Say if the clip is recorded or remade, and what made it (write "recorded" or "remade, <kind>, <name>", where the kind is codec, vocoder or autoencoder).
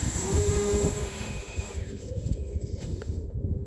remade, autoencoder, DAC-VAE